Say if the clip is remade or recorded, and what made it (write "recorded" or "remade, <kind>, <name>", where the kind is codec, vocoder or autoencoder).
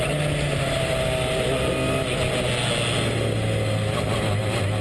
recorded